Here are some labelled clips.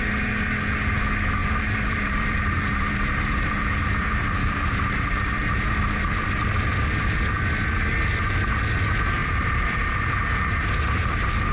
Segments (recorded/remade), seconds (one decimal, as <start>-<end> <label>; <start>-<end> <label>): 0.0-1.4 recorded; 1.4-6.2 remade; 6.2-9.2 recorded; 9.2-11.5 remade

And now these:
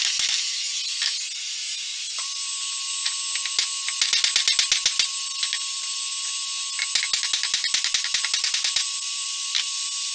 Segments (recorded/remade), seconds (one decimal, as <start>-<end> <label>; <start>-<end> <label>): 0.0-8.4 recorded; 8.4-10.1 remade

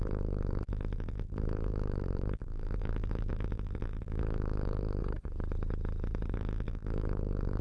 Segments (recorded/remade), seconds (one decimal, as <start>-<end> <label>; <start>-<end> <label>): 0.0-5.0 remade; 5.0-6.3 recorded; 6.3-7.6 remade

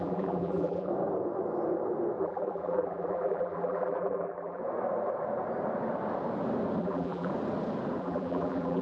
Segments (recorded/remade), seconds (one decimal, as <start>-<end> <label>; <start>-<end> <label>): 0.0-0.9 remade; 0.9-2.2 recorded; 2.2-4.6 remade; 4.6-6.8 recorded; 6.8-7.3 remade; 7.3-8.0 recorded; 8.0-8.8 remade